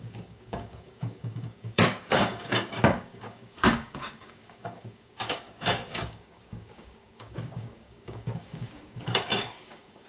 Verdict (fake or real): fake